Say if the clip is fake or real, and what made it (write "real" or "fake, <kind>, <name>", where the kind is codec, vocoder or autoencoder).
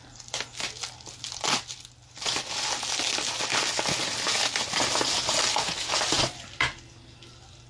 real